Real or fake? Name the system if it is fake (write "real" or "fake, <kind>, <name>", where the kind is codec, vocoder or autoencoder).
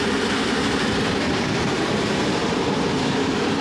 fake, vocoder, BigVGAN v2